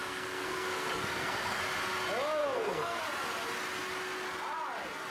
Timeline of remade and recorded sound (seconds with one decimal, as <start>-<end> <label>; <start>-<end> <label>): 0.0-1.6 remade; 1.6-2.4 recorded; 2.4-3.0 remade; 3.0-5.1 recorded